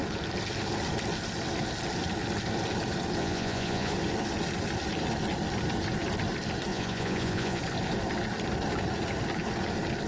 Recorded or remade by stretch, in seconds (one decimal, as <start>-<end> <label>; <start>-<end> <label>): 0.0-3.2 recorded; 3.2-3.9 remade; 3.9-6.7 recorded; 6.7-7.6 remade; 7.6-10.1 recorded